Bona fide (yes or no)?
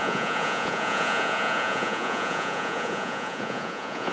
no